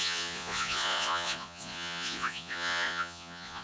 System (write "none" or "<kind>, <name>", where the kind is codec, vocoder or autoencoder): vocoder, Vocos